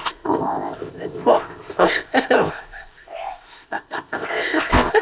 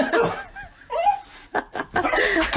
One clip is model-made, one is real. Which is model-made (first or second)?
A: first